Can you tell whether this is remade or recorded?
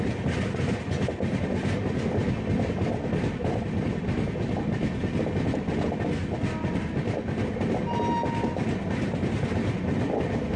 recorded